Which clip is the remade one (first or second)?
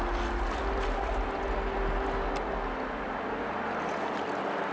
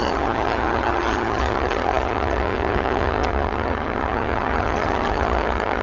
second